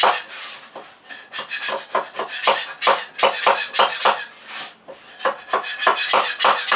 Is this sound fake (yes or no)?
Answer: no